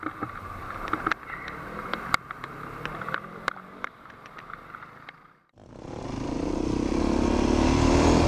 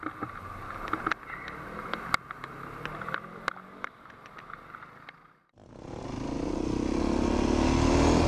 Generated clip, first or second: first